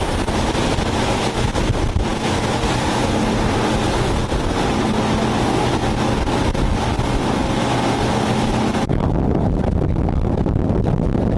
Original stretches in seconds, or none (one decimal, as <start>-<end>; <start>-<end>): 0.0-11.4